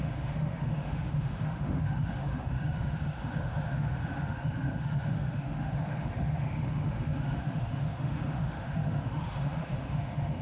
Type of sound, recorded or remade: remade